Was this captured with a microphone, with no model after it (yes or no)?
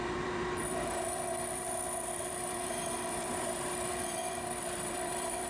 no